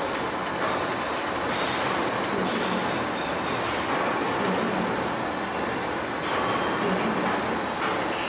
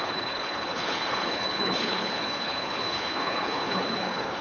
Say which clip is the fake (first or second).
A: second